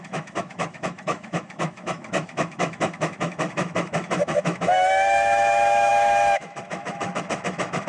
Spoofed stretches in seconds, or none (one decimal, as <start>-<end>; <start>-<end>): 0.0-7.9